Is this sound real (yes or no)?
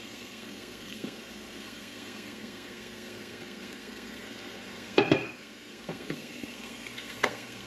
no